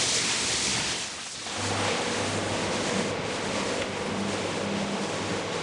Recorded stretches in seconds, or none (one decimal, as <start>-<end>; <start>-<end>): 0.0-5.6